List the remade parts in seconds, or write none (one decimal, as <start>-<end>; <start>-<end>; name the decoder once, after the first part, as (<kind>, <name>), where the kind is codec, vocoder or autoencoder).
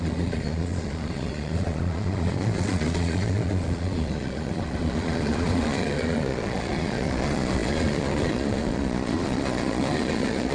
0.0-10.5 (vocoder, Vocos)